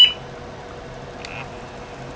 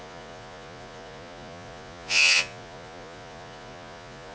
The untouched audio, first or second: first